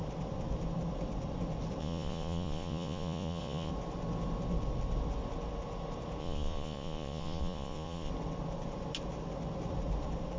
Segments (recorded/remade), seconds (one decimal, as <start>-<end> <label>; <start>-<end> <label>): 0.0-1.8 recorded; 1.8-3.7 remade; 3.7-6.2 recorded; 6.2-8.1 remade; 8.1-10.4 recorded